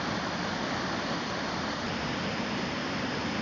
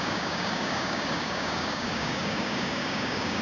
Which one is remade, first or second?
second